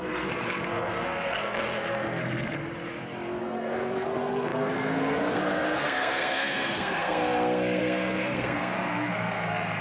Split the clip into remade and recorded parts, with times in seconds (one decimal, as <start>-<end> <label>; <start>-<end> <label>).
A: 0.0-2.2 remade; 2.2-3.4 recorded; 3.4-9.8 remade